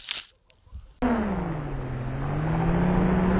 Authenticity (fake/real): real